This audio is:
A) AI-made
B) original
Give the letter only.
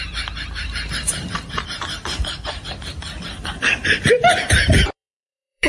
A